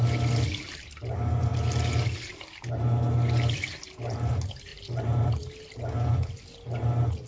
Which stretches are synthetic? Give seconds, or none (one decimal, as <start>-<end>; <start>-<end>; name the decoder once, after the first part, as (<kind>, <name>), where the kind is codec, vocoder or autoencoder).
4.7-5.5 (vocoder, BigVGAN v2)